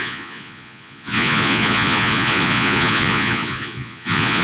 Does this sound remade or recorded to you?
remade